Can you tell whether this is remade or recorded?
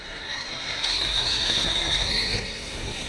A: remade